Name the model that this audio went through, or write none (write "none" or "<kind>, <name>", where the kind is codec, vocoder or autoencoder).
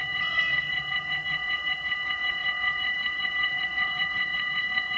vocoder, WaveNeXt